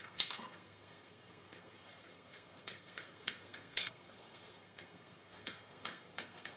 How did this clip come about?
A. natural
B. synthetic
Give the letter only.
B